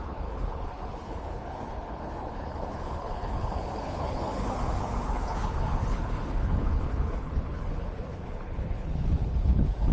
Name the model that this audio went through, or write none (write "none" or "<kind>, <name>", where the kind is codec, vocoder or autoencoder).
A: codec, HILCodec